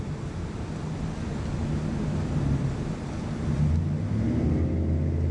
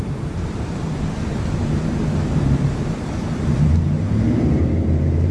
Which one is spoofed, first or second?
second